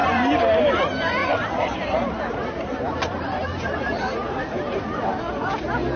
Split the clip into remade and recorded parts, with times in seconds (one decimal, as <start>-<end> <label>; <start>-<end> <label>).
0.0-0.6 remade; 0.6-1.2 recorded; 1.2-4.8 remade; 4.8-6.0 recorded